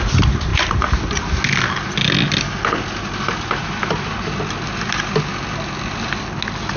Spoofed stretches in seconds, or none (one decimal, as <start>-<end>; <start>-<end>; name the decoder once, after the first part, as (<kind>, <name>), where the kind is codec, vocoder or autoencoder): none

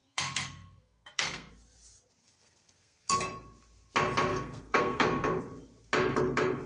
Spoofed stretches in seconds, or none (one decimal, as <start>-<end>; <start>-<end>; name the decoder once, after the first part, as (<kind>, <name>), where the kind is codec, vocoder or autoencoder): 0.0-1.5 (codec, SNAC); 2.2-3.2; 4.3-5.4

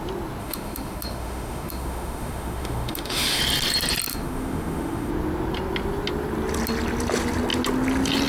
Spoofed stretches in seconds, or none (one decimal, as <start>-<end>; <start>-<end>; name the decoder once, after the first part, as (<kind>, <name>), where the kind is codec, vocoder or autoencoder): 0.4-3.4 (autoencoder, DAC-VAE); 4.1-5.1

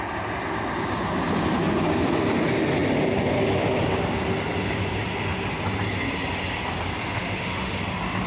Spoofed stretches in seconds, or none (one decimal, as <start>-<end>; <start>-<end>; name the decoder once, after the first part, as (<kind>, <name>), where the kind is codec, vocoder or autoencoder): 7.0-7.8 (autoencoder, DAC-VAE)

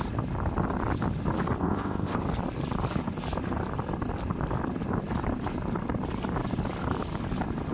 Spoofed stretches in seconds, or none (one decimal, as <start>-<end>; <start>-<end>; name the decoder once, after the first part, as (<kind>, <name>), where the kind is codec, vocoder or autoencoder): 1.6-2.2 (codec, ZipCodec)